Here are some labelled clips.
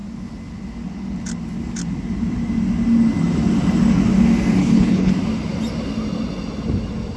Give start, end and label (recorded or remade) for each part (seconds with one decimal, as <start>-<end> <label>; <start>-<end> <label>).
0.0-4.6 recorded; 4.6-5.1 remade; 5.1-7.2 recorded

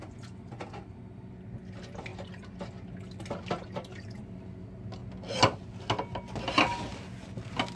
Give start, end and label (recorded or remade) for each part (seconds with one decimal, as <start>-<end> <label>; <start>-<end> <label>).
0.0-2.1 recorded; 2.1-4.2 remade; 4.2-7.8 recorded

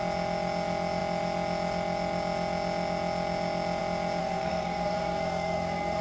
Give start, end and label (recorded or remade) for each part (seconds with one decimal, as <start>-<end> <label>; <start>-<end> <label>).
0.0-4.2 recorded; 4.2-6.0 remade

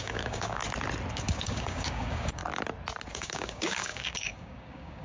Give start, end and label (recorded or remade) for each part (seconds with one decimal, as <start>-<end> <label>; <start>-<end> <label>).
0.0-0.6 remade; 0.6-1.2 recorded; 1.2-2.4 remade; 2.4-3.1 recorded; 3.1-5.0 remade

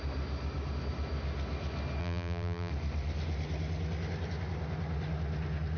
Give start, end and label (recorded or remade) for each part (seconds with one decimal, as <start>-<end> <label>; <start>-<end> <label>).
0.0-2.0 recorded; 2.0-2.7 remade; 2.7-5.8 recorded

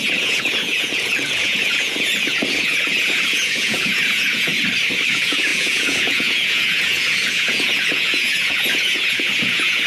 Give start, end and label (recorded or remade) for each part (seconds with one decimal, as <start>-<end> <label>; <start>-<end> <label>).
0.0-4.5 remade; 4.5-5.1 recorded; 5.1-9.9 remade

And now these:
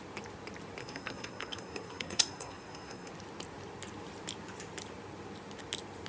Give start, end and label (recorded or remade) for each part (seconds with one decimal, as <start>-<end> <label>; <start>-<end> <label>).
0.0-0.8 recorded; 0.8-3.1 remade; 3.1-6.1 recorded

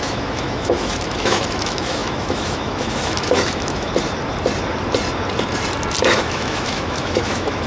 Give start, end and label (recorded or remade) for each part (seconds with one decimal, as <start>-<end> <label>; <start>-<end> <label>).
0.0-3.9 remade; 3.9-6.1 recorded; 6.1-7.7 remade